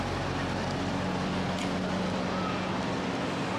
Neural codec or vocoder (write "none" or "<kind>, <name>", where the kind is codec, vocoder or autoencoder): none